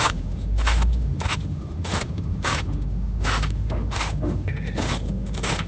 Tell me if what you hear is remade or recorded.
remade